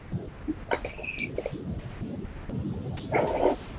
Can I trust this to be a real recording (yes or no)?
yes